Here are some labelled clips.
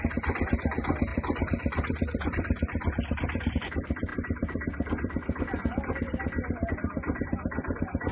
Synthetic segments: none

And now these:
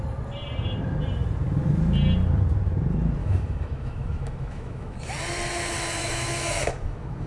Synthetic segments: 3.2-5.1 (autoencoder, DAC-VAE); 6.0-7.3

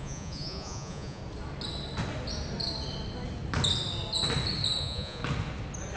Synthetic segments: 0.0-1.2 (vocoder, Vocos); 4.8-5.2

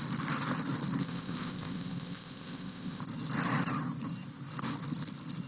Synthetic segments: 1.0-3.0 (codec, ZipCodec)

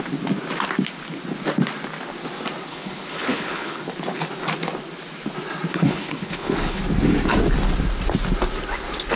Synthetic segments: 2.7-3.9 (codec, HILCodec); 5.7-6.8

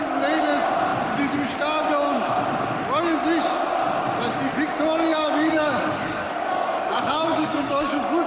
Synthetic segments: 5.1-8.3 (codec, DAC)

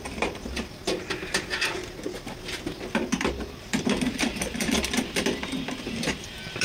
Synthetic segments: 0.0-0.8 (vocoder, BigVGAN v2); 3.3-6.6

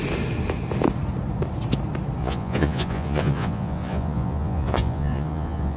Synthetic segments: 2.2-5.8 (vocoder, Vocos)